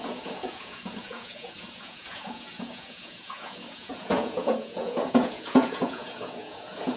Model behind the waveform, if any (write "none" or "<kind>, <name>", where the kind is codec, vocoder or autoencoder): vocoder, Vocos